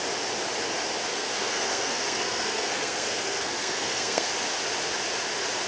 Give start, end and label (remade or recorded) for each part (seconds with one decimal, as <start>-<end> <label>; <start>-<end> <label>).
0.0-1.1 recorded; 1.1-4.3 remade; 4.3-5.7 recorded